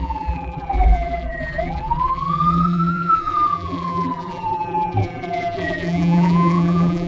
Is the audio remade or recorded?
remade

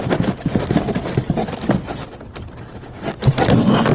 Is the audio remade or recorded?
recorded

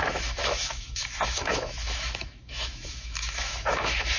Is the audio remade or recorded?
remade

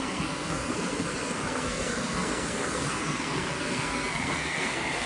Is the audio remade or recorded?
remade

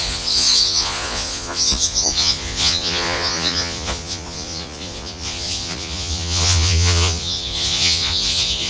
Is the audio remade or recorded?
remade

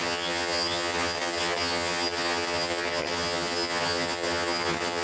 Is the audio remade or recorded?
remade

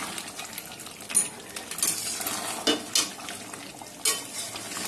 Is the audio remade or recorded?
recorded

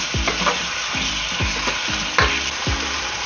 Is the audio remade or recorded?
recorded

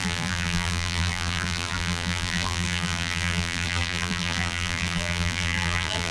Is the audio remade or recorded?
remade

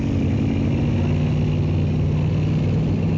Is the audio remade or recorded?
recorded